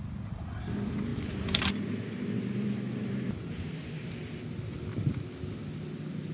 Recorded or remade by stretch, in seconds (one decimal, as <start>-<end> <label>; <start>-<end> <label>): 0.0-1.1 recorded; 1.1-4.1 remade; 4.1-6.3 recorded